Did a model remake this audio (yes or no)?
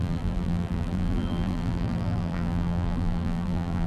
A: yes